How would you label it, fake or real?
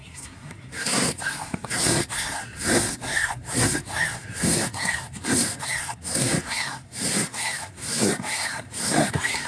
fake